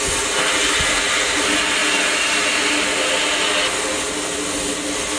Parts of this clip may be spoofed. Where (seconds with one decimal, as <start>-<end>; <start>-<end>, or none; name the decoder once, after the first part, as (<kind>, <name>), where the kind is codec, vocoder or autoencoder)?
none